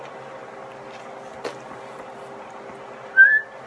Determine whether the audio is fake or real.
real